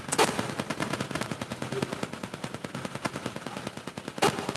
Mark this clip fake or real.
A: real